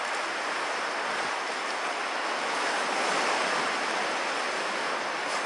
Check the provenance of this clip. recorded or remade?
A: recorded